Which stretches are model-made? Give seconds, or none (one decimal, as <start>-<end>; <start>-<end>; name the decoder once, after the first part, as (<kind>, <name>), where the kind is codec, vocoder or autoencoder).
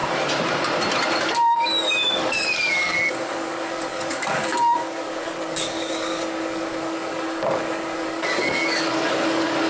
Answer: 1.2-9.7 (codec, DAC)